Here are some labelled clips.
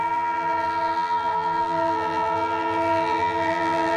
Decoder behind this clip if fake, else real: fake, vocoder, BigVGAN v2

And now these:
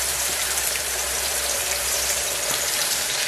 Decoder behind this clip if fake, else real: fake, vocoder, BigVGAN v2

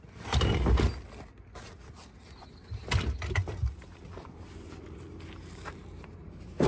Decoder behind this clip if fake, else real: real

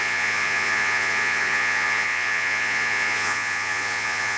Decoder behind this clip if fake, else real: fake, vocoder, Vocos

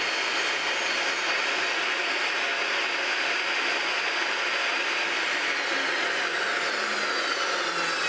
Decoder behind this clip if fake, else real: real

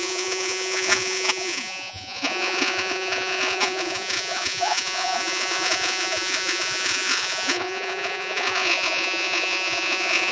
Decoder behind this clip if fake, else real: fake, vocoder, Vocos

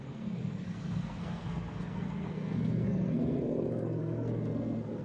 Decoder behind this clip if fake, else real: fake, codec, SNAC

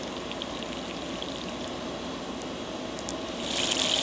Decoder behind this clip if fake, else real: real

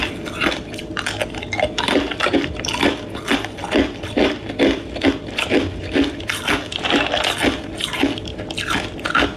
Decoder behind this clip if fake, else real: real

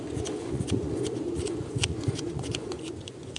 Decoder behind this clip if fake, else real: fake, vocoder, Vocos